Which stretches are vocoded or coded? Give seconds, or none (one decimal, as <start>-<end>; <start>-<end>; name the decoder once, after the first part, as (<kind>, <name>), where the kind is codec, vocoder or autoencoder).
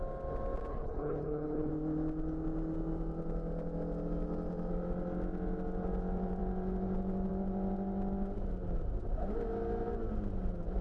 0.7-1.7 (codec, HILCodec)